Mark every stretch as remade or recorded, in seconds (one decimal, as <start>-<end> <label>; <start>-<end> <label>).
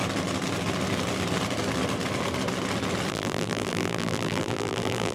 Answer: 0.0-3.1 recorded; 3.1-5.1 remade